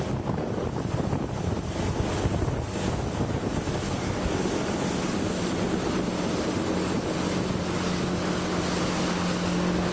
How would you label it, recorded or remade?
recorded